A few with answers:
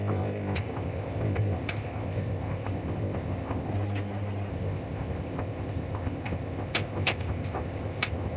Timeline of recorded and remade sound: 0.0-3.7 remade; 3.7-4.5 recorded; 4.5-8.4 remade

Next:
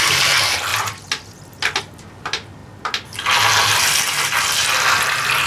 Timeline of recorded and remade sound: 0.0-5.5 recorded